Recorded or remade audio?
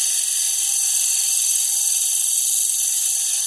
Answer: recorded